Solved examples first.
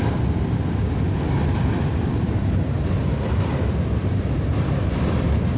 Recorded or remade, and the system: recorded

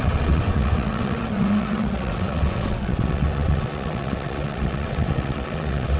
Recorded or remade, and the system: remade, vocoder, WaveNeXt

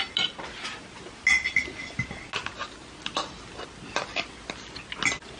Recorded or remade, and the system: recorded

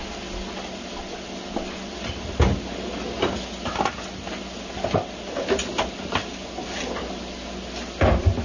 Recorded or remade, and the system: recorded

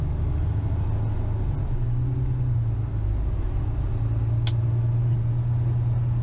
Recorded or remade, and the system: recorded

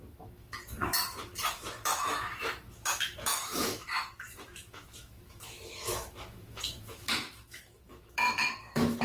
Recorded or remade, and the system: remade, autoencoder, DAC-VAE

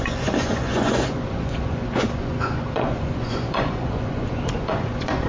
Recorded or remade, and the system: remade, vocoder, Vocos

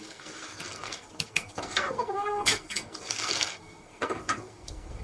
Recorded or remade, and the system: remade, codec, SNAC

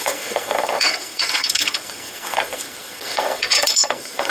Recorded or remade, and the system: remade, codec, SNAC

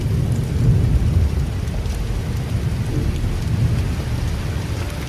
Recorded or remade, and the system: recorded